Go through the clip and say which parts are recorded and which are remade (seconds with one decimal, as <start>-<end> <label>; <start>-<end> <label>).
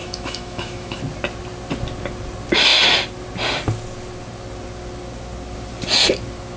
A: 0.0-1.0 remade; 1.0-6.6 recorded